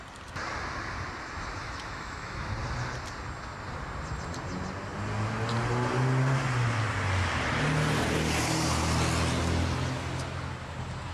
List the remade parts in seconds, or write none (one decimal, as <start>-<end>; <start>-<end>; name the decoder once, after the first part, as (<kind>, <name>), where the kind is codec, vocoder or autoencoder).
1.6-2.5 (autoencoder, DAC-VAE)